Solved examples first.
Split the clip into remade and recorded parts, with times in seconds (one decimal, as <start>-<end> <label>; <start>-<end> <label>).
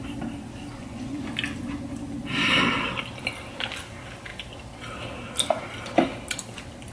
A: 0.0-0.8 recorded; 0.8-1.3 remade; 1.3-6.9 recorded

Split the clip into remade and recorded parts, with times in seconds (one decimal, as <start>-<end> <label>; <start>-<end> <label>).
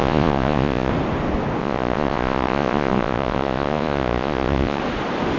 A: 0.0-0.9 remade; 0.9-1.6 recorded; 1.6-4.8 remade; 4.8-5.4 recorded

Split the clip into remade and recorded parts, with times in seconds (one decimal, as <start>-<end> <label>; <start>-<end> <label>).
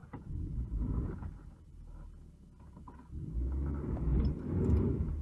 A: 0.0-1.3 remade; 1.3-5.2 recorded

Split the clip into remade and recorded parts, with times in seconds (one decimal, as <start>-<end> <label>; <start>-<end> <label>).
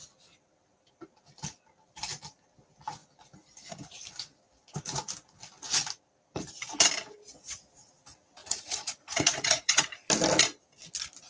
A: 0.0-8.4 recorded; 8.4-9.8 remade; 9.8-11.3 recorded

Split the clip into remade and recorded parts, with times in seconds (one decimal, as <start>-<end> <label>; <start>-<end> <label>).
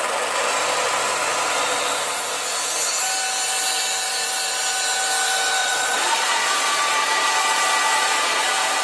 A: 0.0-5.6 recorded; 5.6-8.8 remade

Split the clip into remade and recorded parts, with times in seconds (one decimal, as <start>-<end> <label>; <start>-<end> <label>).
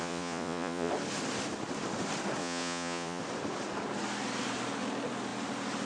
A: 0.0-0.9 remade; 0.9-2.4 recorded; 2.4-3.2 remade; 3.2-5.9 recorded